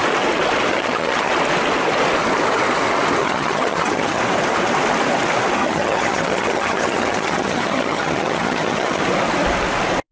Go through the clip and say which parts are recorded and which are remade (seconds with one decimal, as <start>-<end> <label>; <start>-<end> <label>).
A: 0.0-0.7 recorded; 0.7-1.3 remade; 1.3-3.2 recorded; 3.2-4.2 remade; 4.2-5.6 recorded; 5.6-9.0 remade; 9.0-10.1 recorded